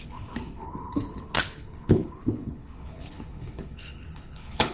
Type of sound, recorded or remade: remade